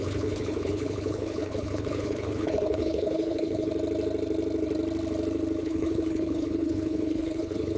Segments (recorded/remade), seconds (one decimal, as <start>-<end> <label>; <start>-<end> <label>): 0.0-3.7 remade; 3.7-5.6 recorded; 5.6-7.8 remade